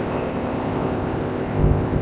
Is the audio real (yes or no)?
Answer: no